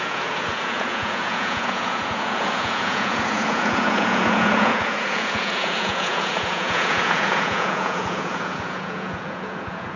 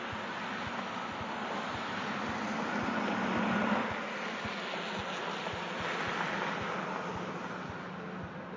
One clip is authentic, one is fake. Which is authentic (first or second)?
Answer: second